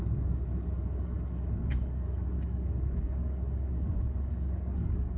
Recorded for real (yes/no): no